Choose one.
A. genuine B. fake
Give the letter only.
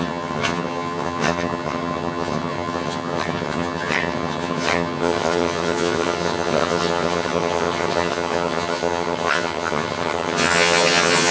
B